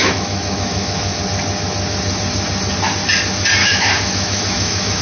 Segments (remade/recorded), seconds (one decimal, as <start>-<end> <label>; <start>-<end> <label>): 0.0-1.2 remade; 1.2-3.6 recorded; 3.6-5.0 remade